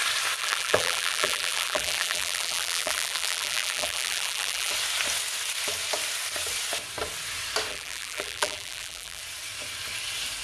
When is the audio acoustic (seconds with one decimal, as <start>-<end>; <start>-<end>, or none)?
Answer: 0.0-0.4; 4.7-7.7; 9.2-10.4